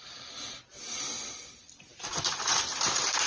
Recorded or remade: recorded